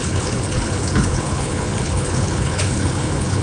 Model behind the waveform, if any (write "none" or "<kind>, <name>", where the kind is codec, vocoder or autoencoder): codec, HILCodec